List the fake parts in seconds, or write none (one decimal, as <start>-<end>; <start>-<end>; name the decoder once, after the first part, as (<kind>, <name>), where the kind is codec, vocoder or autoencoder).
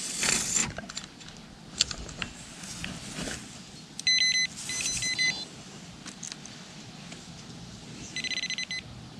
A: none